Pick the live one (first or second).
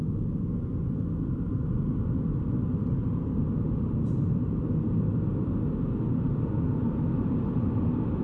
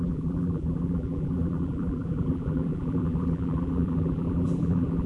first